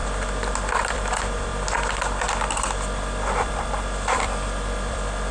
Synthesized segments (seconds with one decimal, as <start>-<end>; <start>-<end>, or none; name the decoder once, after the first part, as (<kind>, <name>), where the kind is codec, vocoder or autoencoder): 0.9-1.5 (vocoder, BigVGAN v2); 3.4-5.3